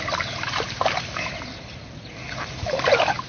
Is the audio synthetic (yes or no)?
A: no